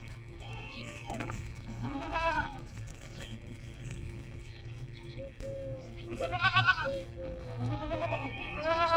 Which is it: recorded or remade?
remade